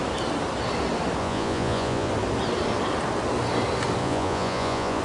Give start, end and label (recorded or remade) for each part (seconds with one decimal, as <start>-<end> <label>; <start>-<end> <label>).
0.0-1.2 recorded; 1.2-2.1 remade; 2.1-4.0 recorded; 4.0-5.0 remade